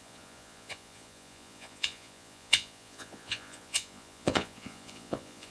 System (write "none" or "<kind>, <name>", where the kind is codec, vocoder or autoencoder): vocoder, Vocos